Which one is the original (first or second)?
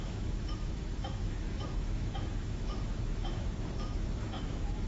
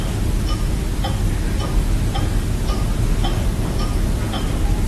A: second